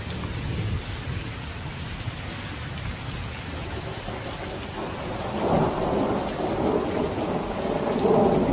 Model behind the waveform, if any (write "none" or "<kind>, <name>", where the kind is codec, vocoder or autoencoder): none